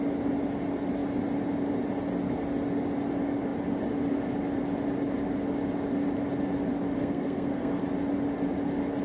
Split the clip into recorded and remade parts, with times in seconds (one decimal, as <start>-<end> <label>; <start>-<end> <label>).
0.0-7.0 recorded; 7.0-7.8 remade; 7.8-9.0 recorded

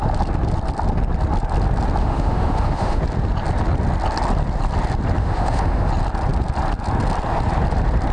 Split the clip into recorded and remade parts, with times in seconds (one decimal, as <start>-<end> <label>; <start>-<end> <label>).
0.0-2.0 recorded; 2.0-3.0 remade; 3.0-5.2 recorded; 5.2-5.9 remade; 5.9-8.1 recorded